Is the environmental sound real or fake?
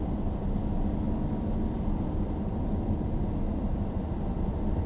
real